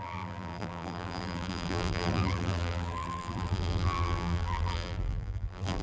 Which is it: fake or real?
fake